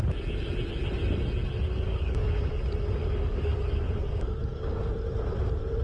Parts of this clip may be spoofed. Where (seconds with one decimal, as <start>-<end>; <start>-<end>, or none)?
1.7-2.6; 3.0-3.6; 4.1-4.9